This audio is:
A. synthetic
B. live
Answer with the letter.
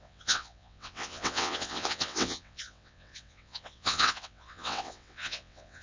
A